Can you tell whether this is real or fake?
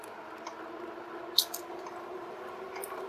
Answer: real